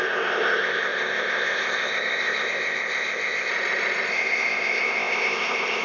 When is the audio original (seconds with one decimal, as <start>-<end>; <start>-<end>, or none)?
3.5-4.1